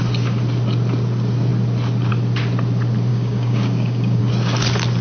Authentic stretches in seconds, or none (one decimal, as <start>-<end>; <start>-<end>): 0.0-3.1; 4.2-5.0